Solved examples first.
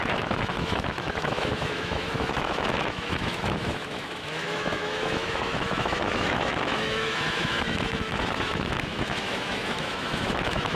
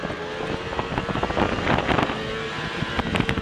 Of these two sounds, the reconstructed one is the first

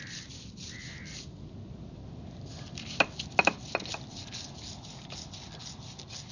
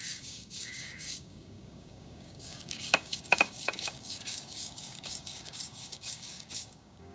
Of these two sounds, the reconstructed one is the second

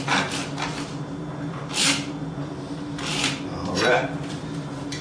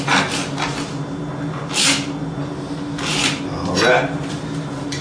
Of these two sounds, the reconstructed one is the first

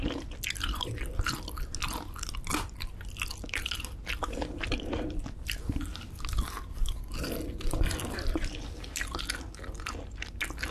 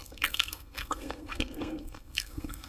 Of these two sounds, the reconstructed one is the second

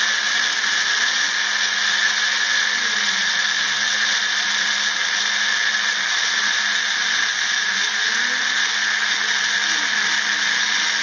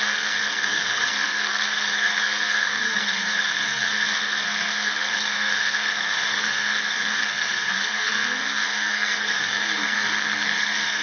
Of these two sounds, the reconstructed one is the second